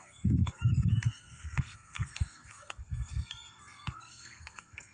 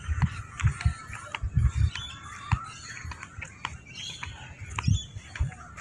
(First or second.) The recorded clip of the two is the second